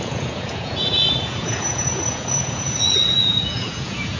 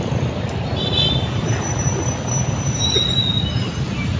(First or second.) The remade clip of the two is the first